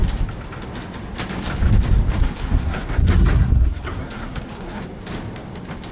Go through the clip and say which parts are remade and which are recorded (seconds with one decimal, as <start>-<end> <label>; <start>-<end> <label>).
0.0-2.2 recorded; 2.2-4.8 remade; 4.8-5.9 recorded